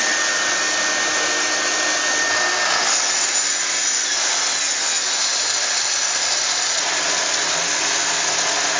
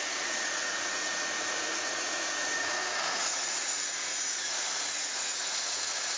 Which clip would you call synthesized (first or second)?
second